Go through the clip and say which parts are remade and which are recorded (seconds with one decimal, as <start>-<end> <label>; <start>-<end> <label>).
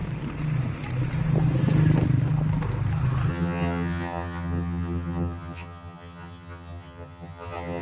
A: 0.0-3.3 recorded; 3.3-7.8 remade